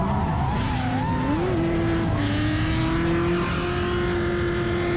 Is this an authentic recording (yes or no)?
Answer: yes